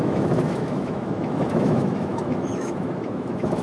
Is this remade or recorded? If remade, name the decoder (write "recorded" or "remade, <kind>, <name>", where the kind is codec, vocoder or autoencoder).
remade, autoencoder, DAC-VAE